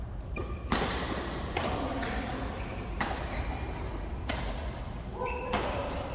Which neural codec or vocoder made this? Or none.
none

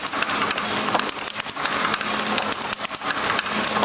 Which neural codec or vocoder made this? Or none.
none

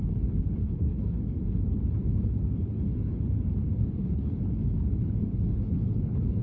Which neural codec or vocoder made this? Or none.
codec, HILCodec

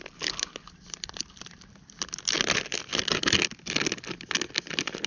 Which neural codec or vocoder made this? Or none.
none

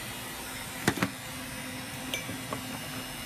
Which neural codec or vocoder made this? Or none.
none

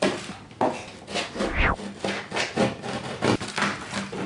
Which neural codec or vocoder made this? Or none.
none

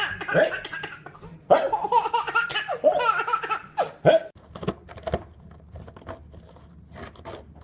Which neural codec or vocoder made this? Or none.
none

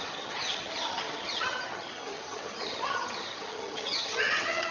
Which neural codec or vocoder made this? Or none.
vocoder, HiFi-GAN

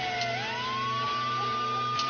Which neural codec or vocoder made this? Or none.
none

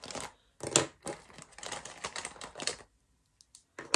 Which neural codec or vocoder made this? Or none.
none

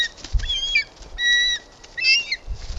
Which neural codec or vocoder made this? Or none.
none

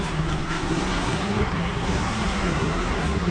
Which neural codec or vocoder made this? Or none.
codec, SNAC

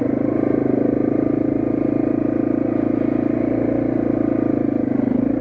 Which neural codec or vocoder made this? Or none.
none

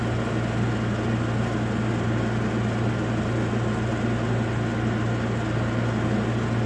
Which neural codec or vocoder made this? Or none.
none